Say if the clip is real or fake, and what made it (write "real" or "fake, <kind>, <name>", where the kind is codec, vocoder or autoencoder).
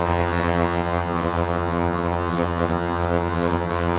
fake, vocoder, HiFi-GAN